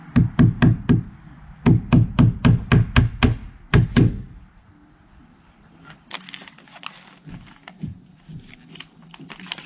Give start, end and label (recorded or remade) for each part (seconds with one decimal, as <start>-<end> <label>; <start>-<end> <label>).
0.0-9.7 recorded